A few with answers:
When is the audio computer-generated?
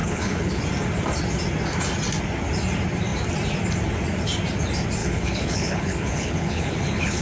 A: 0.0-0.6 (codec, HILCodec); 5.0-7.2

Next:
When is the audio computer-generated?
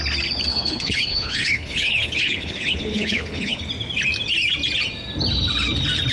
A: 0.5-3.6 (codec, HILCodec)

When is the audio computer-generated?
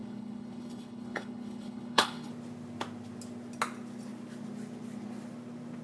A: 0.0-2.3 (codec, HILCodec)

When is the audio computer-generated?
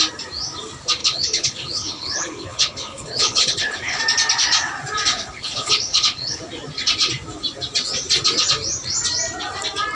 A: 1.0-4.0 (codec, HILCodec); 5.1-6.4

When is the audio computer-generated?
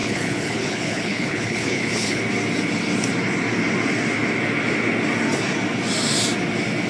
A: 0.0-2.2 (codec, HILCodec)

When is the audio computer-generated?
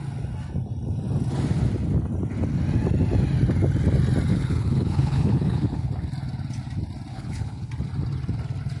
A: 4.3-5.9 (codec, HILCodec); 7.1-7.7